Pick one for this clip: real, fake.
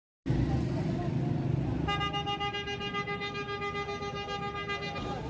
real